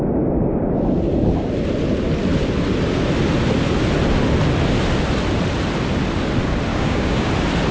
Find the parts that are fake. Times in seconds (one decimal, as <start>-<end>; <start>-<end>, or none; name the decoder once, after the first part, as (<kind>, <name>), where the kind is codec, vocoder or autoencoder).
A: 6.7-7.3 (codec, DAC)